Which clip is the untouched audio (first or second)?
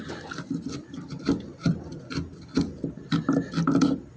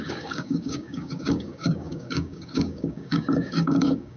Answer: first